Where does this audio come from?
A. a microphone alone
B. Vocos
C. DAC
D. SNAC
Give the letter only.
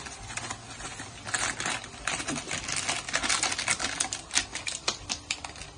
A